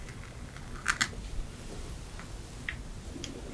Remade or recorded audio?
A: recorded